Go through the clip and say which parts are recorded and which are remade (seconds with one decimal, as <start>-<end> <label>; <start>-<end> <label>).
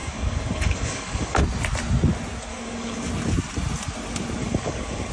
0.0-1.4 remade; 1.4-2.5 recorded; 2.5-3.1 remade; 3.1-4.4 recorded; 4.4-5.1 remade